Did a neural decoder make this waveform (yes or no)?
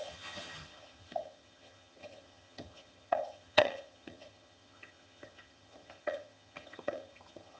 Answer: yes